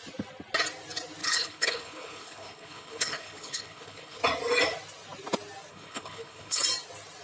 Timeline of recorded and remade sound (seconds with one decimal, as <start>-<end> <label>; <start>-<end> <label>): 0.0-1.2 recorded; 1.2-4.2 remade; 4.2-5.7 recorded; 5.7-6.6 remade; 6.6-7.2 recorded